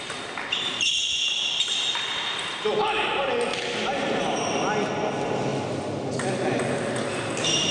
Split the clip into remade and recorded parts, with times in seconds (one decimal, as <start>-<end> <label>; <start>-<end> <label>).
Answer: 0.0-7.7 recorded

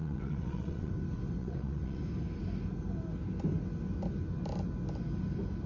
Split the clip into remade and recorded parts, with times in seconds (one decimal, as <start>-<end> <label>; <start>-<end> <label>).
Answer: 0.0-0.9 remade; 0.9-1.4 recorded; 1.4-2.0 remade; 2.0-5.7 recorded

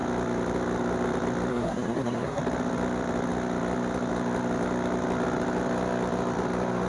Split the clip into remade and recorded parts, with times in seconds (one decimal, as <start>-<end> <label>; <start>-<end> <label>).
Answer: 0.0-1.5 recorded; 1.5-2.4 remade; 2.4-6.9 recorded

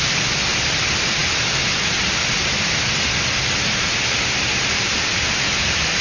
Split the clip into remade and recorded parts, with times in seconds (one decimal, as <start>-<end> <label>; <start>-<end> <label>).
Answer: 0.0-6.0 recorded

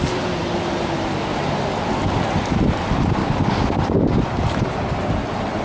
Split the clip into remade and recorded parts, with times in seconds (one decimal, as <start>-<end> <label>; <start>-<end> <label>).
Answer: 0.0-3.2 recorded; 3.2-3.8 remade; 3.8-5.6 recorded